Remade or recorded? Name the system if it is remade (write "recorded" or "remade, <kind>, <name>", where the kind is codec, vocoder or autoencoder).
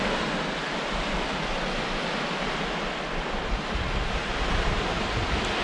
recorded